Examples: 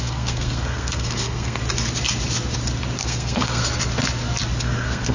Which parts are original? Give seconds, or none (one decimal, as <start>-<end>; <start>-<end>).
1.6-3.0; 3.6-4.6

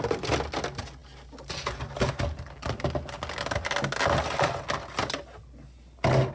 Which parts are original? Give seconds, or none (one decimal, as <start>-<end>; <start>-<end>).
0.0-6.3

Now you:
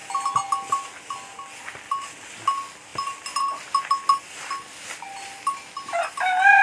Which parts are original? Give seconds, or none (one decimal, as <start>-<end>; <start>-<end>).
0.0-6.6